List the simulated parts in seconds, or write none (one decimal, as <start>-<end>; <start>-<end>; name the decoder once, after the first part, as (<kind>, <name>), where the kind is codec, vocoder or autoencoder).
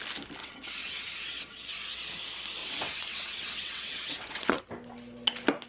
0.4-1.6 (vocoder, WaveNeXt); 2.6-4.6